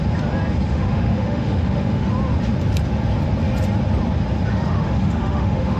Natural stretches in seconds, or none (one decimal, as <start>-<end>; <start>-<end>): 0.0-0.7; 2.1-4.5